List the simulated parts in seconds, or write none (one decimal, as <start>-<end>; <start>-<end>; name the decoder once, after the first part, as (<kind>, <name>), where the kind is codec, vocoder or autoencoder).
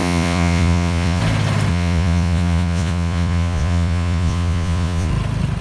0.0-1.2 (vocoder, Vocos); 1.7-5.1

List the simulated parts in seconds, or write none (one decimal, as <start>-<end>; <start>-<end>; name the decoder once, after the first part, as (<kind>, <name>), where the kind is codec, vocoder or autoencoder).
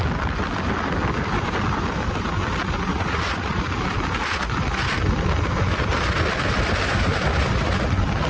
2.9-3.6 (vocoder, Vocos)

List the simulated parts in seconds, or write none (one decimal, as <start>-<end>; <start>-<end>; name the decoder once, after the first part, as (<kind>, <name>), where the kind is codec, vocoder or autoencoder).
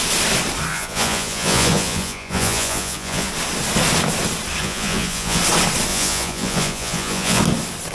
0.7-3.3 (vocoder, Vocos); 4.6-5.4; 5.9-7.4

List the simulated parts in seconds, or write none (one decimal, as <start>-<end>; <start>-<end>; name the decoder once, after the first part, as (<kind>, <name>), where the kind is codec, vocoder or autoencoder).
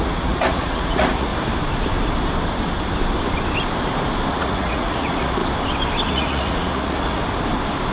0.0-1.3 (vocoder, Vocos); 4.3-5.4; 6.1-7.2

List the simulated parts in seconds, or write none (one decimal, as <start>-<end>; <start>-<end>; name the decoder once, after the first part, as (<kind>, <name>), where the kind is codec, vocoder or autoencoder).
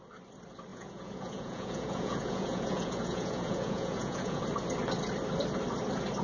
0.7-4.4 (vocoder, Vocos)